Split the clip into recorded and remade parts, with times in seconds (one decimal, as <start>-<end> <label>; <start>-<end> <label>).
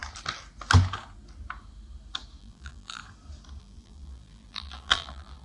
0.0-2.4 recorded; 2.4-3.0 remade; 3.0-3.6 recorded; 3.6-5.4 remade